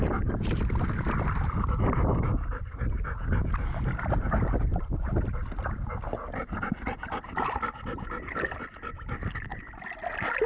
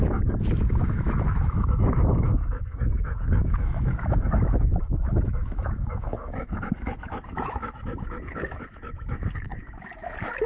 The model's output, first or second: second